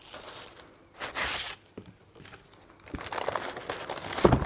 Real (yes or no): yes